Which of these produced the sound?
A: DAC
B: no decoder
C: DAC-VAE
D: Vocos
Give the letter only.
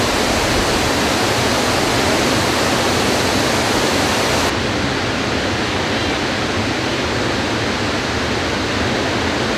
B